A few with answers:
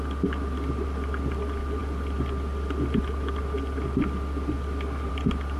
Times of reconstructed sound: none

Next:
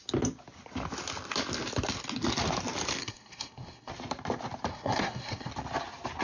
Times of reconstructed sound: 3.0-3.9 (codec, SNAC); 4.7-5.5

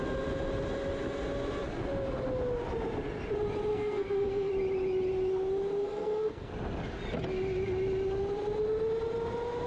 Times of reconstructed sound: 3.7-4.5 (codec, SNAC); 5.8-6.5

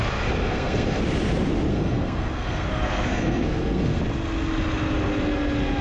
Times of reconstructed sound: 0.4-1.0 (codec, SNAC); 1.7-4.0

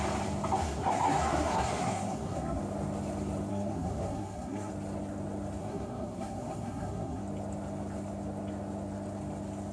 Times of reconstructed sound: 0.6-2.6 (codec, SNAC); 3.5-4.7; 5.6-7.2